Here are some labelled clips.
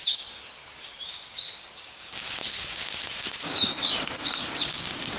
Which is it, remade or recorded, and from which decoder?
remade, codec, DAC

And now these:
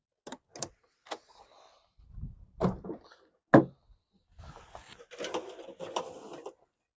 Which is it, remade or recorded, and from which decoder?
recorded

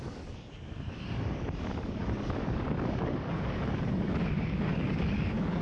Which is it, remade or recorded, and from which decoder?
remade, codec, DAC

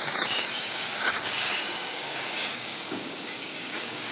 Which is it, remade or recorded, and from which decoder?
remade, codec, DAC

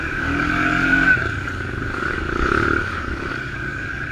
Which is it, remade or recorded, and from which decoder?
remade, codec, DAC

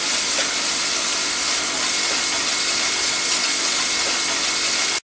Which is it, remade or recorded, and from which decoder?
recorded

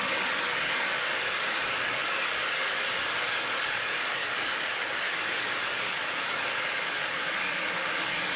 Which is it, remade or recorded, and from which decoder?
remade, codec, DAC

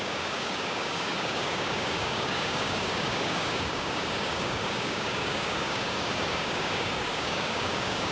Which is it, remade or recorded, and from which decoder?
remade, codec, DAC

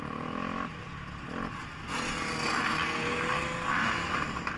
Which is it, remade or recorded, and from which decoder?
recorded